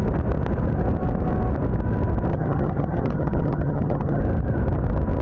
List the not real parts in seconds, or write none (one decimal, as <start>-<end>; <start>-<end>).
2.3-4.2